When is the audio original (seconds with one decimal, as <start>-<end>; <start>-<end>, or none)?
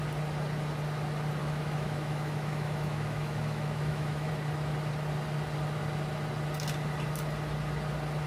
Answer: 0.0-1.4; 4.3-8.3